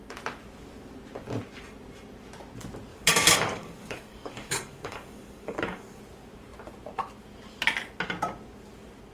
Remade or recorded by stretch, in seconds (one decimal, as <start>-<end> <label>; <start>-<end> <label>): 0.0-2.9 recorded; 2.9-6.0 remade; 6.0-9.1 recorded